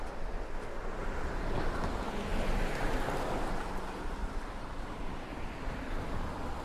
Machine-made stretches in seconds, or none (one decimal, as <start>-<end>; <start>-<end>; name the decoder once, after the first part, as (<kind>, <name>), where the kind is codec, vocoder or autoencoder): 2.3-3.5 (vocoder, BigVGAN v2); 4.2-5.9